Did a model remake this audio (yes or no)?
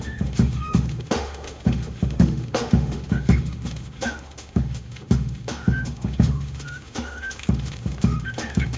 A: yes